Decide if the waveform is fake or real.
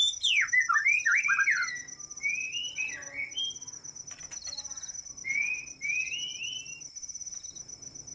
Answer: real